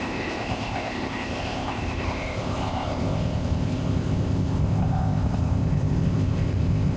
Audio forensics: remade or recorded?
remade